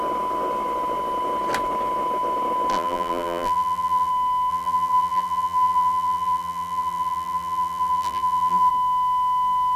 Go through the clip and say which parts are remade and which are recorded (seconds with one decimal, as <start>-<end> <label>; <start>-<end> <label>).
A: 0.0-2.7 recorded; 2.7-4.1 remade; 4.1-4.5 recorded; 4.5-8.7 remade; 8.7-9.8 recorded